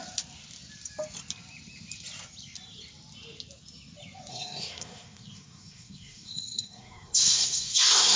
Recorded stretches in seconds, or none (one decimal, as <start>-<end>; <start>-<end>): 0.0-4.3